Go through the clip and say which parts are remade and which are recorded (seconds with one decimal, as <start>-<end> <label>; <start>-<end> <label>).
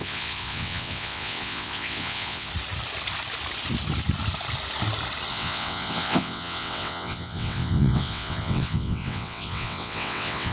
0.0-2.5 remade; 2.5-5.3 recorded; 5.3-10.5 remade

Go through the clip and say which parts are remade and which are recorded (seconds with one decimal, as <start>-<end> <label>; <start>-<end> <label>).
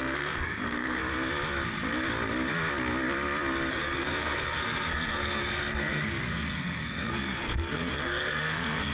0.0-1.0 remade; 1.0-3.7 recorded; 3.7-8.9 remade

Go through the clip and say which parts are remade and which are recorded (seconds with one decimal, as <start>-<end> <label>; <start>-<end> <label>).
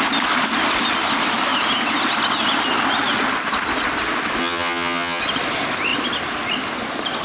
0.0-4.4 recorded; 4.4-5.2 remade; 5.2-7.2 recorded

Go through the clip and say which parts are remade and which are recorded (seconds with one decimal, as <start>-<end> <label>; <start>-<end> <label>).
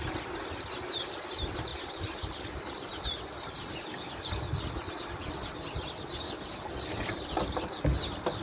0.0-1.7 recorded; 1.7-6.2 remade; 6.2-8.4 recorded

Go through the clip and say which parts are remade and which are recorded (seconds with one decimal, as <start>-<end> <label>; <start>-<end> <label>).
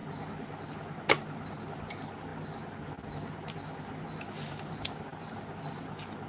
0.0-6.3 recorded